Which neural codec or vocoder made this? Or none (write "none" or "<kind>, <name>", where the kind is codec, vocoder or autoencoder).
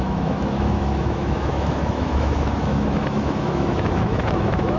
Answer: autoencoder, DAC-VAE